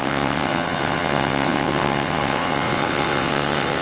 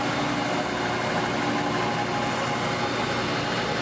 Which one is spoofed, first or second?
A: first